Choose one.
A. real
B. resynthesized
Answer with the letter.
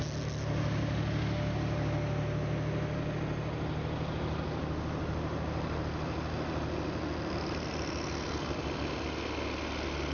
A